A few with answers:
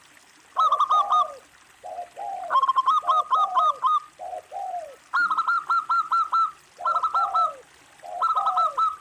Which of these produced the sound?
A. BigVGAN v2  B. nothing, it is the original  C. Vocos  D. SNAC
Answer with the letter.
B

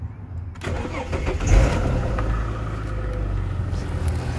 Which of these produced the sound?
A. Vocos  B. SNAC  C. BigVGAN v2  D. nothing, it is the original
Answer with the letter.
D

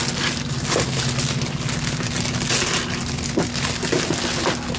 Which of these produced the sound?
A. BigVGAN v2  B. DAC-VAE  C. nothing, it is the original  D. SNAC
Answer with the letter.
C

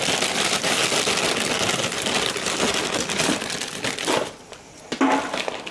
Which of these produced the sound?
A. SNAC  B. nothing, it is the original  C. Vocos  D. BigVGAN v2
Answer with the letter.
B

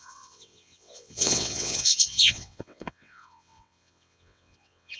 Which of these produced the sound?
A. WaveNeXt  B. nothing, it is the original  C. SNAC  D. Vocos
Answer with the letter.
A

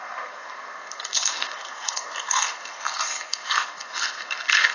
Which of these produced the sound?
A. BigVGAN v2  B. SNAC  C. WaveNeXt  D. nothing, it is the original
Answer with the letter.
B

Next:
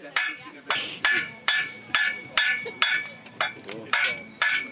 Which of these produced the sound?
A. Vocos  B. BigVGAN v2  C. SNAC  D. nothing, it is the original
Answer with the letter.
B